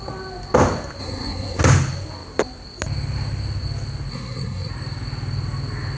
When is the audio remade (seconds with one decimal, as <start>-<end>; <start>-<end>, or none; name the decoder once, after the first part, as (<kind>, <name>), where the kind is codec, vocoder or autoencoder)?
1.0-1.6 (codec, SNAC); 4.1-4.7